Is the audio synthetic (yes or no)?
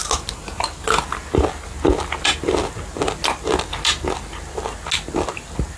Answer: no